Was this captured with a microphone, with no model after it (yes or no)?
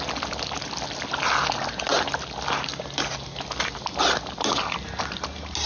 yes